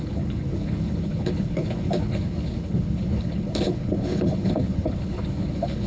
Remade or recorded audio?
remade